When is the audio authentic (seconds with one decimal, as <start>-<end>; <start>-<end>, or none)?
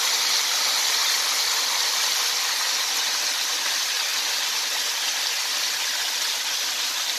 0.0-7.2